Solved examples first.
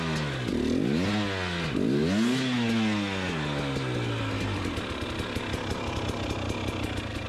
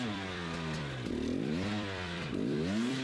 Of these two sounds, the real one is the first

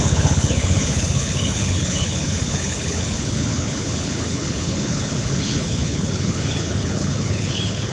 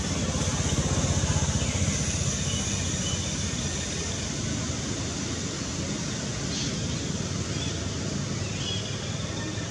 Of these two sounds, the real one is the second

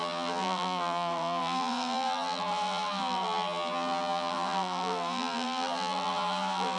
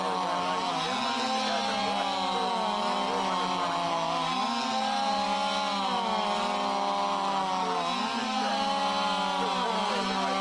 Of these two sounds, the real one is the second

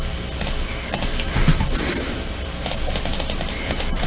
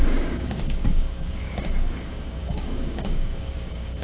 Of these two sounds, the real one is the first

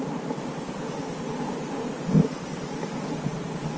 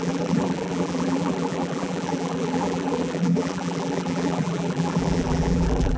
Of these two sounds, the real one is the first